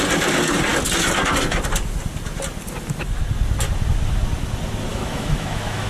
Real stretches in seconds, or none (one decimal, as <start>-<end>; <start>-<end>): 0.0-4.9